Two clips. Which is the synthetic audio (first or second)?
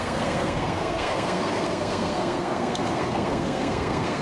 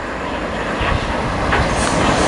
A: first